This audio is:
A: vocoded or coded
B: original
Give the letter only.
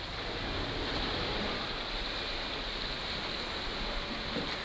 B